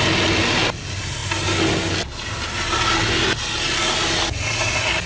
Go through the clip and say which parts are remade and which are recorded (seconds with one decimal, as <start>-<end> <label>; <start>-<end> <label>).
0.0-5.1 recorded